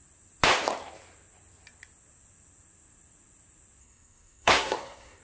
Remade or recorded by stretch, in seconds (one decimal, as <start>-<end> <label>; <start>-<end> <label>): 0.0-3.8 recorded; 3.8-5.2 remade